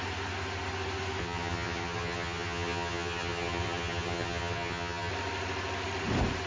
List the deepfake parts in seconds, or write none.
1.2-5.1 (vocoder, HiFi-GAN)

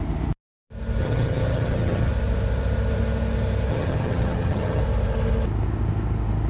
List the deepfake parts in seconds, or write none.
1.0-2.1 (vocoder, HiFi-GAN); 3.7-4.8

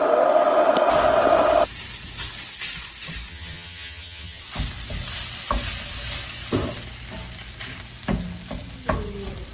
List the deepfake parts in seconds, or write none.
3.3-4.4 (vocoder, HiFi-GAN)

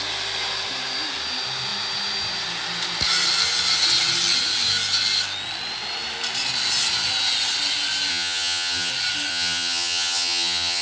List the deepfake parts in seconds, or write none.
8.1-8.9 (vocoder, HiFi-GAN); 9.3-10.8

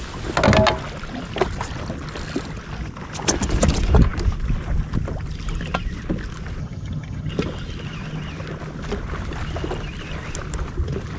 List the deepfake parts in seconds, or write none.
6.6-7.3 (vocoder, HiFi-GAN)

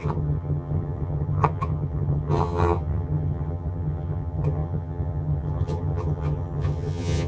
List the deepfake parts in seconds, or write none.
0.0-7.3 (vocoder, HiFi-GAN)

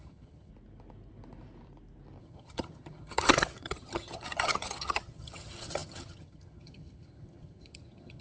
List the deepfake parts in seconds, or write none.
0.0-0.5 (vocoder, HiFi-GAN); 2.2-8.2

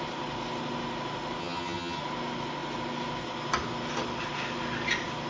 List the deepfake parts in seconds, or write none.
1.4-2.0 (vocoder, HiFi-GAN)